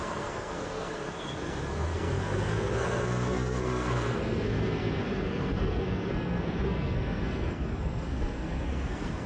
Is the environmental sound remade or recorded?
remade